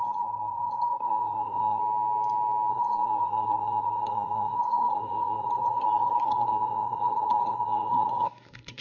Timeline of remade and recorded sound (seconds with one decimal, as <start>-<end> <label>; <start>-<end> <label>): 0.0-1.8 remade; 1.8-2.7 recorded; 2.7-8.8 remade